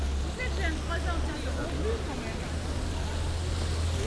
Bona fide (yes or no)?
yes